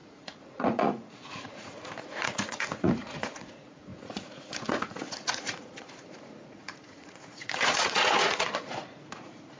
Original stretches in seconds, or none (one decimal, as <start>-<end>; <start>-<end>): none